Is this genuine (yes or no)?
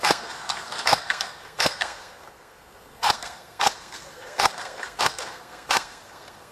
no